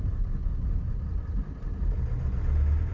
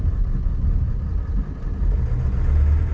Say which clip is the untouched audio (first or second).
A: second